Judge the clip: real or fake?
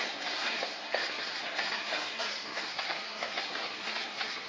fake